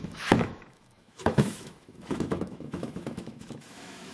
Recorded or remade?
remade